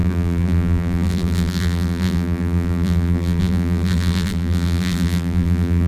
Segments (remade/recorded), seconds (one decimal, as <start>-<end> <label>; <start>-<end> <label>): 0.0-5.9 remade